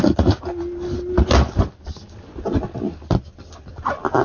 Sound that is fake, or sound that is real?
real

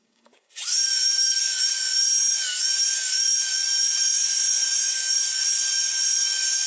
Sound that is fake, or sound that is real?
fake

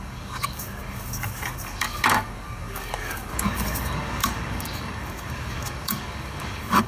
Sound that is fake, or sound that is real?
fake